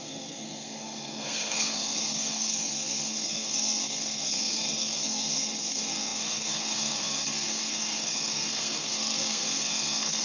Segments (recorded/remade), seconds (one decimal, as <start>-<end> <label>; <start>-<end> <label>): 0.0-10.2 remade